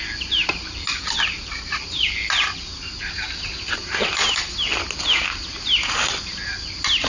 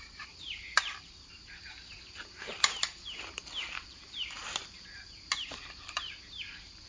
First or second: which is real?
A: first